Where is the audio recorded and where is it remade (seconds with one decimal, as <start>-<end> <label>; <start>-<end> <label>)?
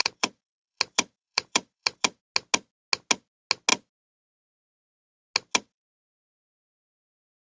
0.0-2.2 remade; 2.2-5.5 recorded; 5.5-6.8 remade; 6.8-7.5 recorded